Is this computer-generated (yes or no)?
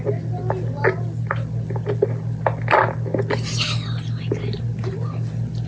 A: no